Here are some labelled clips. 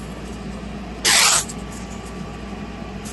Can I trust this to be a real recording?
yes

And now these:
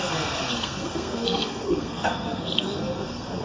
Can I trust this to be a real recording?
no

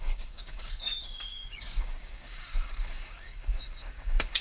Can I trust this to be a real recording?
no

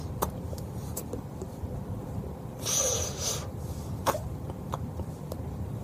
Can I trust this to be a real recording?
no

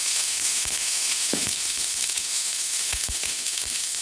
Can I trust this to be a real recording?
no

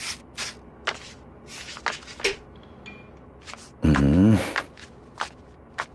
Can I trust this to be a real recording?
yes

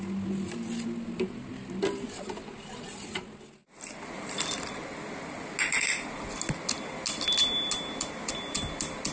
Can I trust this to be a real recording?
yes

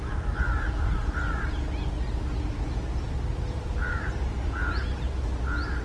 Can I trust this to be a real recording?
yes